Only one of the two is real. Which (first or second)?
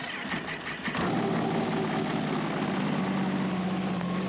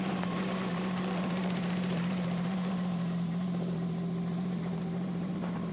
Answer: first